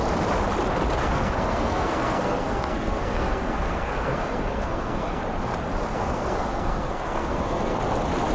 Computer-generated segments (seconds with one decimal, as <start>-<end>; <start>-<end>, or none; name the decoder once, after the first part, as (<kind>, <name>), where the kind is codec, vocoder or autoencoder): 1.0-5.2 (codec, SNAC); 5.9-7.8